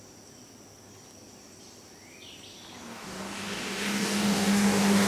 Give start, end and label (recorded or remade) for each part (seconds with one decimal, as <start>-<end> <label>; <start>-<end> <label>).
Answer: 0.0-2.9 recorded; 2.9-5.1 remade